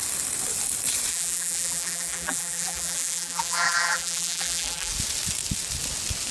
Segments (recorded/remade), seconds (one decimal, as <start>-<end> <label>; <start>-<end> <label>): 0.0-1.1 recorded; 1.1-4.9 remade; 4.9-6.3 recorded